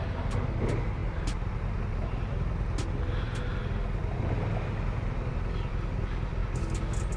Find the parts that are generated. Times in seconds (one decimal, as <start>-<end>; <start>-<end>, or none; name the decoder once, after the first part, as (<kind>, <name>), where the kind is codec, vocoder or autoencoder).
none